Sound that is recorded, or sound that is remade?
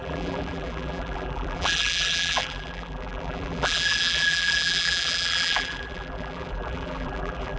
remade